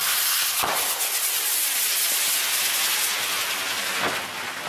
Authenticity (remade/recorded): recorded